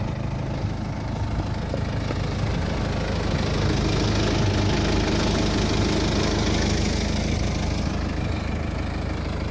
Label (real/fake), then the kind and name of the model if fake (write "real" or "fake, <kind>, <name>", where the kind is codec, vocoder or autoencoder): real